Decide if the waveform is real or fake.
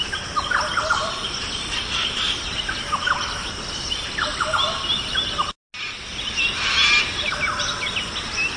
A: real